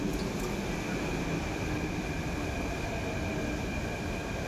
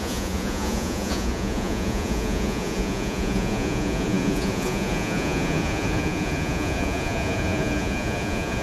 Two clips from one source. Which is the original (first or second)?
first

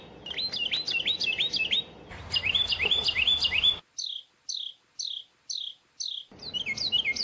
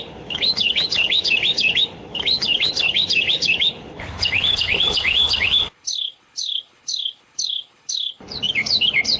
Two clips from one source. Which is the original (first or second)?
first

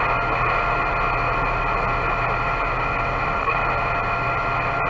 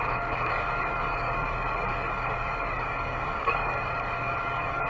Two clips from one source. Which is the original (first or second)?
first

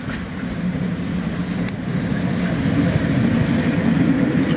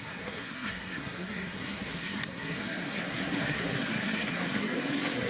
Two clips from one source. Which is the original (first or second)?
first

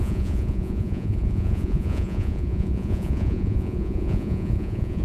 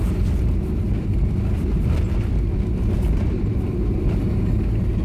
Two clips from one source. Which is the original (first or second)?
second